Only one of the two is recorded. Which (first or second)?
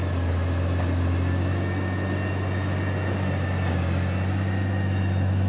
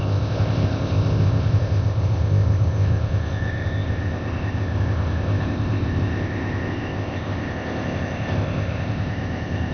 first